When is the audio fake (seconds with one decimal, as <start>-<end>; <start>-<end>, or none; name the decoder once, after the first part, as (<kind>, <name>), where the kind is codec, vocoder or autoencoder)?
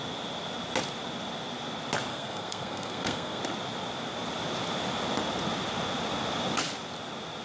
2.1-3.4 (codec, SNAC)